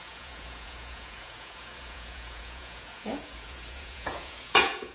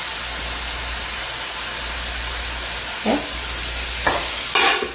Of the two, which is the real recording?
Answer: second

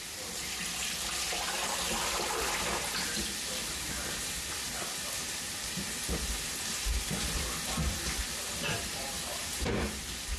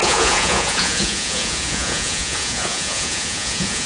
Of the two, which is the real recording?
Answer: first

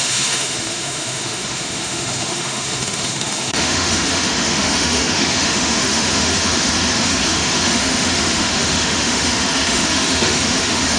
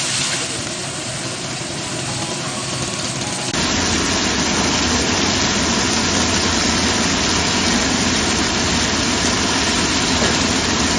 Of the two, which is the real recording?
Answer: second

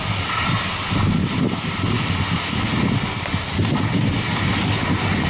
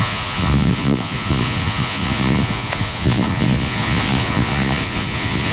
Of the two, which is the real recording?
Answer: first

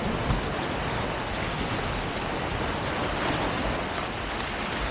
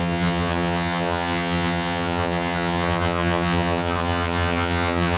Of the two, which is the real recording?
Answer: first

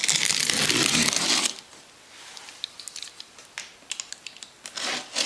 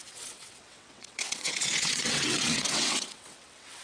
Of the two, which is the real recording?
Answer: first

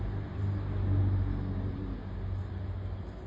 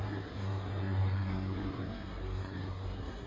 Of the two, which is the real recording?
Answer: first